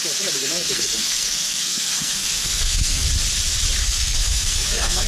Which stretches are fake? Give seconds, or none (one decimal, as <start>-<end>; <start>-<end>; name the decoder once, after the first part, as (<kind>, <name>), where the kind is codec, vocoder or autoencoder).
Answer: 0.4-3.1 (codec, SNAC); 3.8-5.1